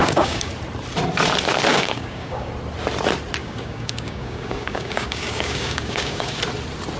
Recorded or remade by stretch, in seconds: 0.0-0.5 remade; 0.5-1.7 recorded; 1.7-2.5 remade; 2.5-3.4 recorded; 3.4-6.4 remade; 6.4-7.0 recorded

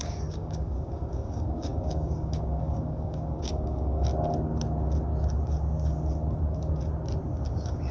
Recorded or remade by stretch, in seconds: 0.0-4.1 remade; 4.1-7.5 recorded; 7.5-7.9 remade

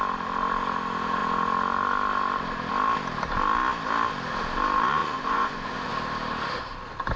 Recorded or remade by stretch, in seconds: 0.0-5.0 recorded; 5.0-5.9 remade; 5.9-7.2 recorded

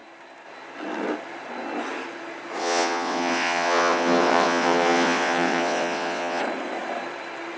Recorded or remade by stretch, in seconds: 0.0-2.6 recorded; 2.6-6.4 remade; 6.4-7.6 recorded

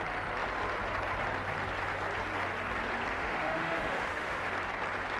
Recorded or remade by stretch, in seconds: 0.0-3.1 recorded; 3.1-4.5 remade; 4.5-5.2 recorded